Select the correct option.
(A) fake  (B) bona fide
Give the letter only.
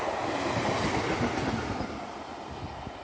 B